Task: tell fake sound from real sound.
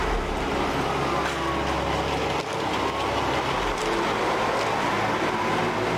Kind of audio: real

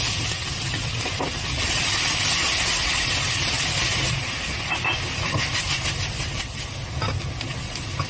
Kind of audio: real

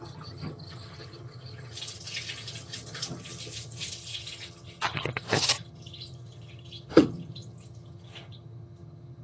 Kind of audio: fake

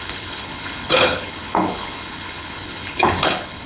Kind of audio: fake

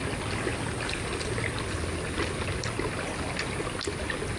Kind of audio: real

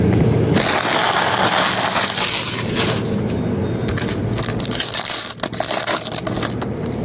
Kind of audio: real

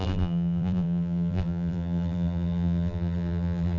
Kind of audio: fake